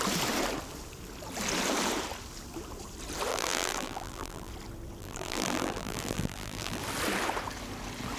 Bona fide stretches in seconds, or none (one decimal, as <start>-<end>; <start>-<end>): 0.0-3.3; 4.5-5.0; 6.8-8.2